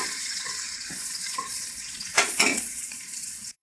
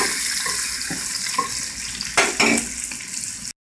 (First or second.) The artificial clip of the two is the first